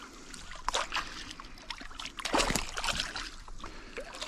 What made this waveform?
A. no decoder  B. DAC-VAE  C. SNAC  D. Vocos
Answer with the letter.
A